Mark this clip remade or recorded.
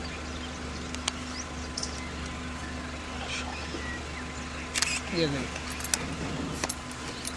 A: recorded